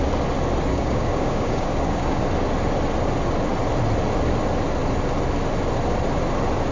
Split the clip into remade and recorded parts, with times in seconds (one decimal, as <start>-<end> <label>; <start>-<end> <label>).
0.0-0.7 recorded; 0.7-2.2 remade; 2.2-6.7 recorded

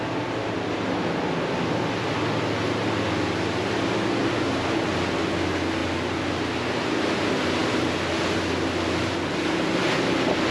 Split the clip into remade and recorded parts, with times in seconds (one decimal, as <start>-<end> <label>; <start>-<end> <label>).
0.0-10.5 recorded

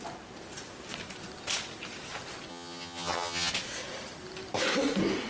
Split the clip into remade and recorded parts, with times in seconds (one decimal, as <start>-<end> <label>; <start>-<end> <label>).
0.0-2.5 recorded; 2.5-3.5 remade; 3.5-5.3 recorded

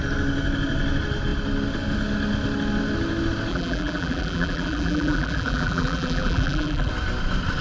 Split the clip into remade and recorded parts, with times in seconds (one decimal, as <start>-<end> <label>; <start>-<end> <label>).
0.0-3.5 recorded; 3.5-6.9 remade; 6.9-7.6 recorded

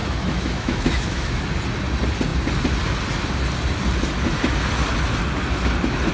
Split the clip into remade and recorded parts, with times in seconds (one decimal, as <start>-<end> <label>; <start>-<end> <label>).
0.0-1.4 remade; 1.4-6.1 recorded

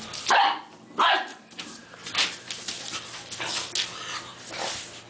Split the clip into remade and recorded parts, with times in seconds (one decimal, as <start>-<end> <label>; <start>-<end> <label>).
0.0-1.3 recorded; 1.3-2.2 remade; 2.2-4.3 recorded; 4.3-5.1 remade